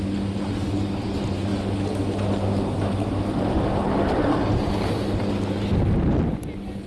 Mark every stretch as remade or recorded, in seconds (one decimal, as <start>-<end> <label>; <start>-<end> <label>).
0.0-6.9 recorded